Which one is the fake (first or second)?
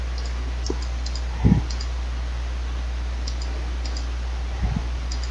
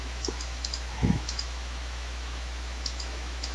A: second